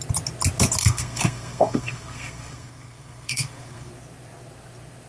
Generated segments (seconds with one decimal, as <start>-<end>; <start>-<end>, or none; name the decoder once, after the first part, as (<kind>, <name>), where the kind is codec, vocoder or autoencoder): 0.8-3.9 (codec, SNAC)